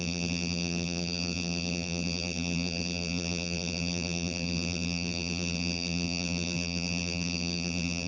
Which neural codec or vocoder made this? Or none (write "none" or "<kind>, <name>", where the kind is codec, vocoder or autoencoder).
vocoder, BigVGAN v2